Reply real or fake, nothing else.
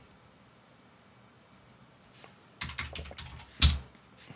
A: real